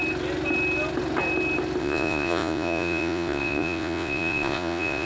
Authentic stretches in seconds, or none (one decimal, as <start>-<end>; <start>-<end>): 0.0-1.8